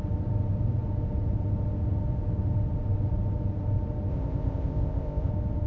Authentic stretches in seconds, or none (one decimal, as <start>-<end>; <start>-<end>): 0.0-4.1; 5.3-5.7